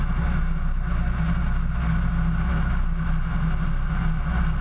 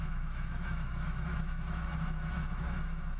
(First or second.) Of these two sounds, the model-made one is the second